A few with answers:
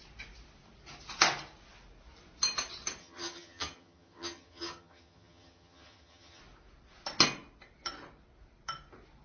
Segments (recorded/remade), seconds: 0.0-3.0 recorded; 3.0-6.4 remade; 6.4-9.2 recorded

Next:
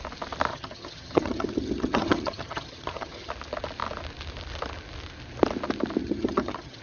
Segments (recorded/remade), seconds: 0.0-0.5 recorded; 0.5-3.3 remade; 3.3-6.0 recorded; 6.0-6.8 remade

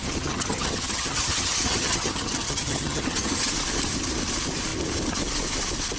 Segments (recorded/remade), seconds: 0.0-3.5 remade; 3.5-6.0 recorded

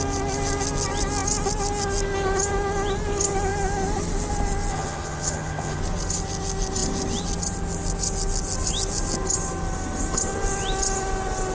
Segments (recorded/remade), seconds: 0.0-4.7 recorded; 4.7-5.8 remade; 5.8-11.5 recorded

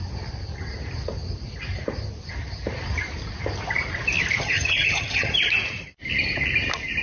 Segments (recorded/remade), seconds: 0.0-4.4 recorded; 4.4-5.3 remade; 5.3-7.0 recorded

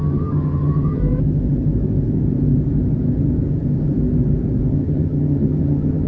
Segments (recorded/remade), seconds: 0.0-1.0 remade; 1.0-4.7 recorded; 4.7-6.1 remade

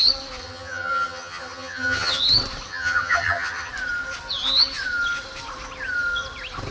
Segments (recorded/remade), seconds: 0.0-0.4 recorded; 0.4-2.2 remade; 2.2-2.7 recorded; 2.7-3.7 remade; 3.7-6.7 recorded

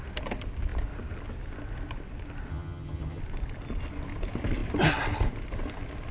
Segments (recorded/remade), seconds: 0.0-2.5 recorded; 2.5-3.2 remade; 3.2-6.1 recorded